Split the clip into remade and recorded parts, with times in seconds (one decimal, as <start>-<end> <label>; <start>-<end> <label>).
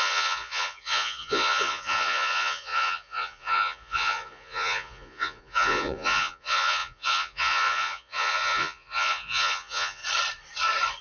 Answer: 0.0-10.0 remade; 10.0-11.0 recorded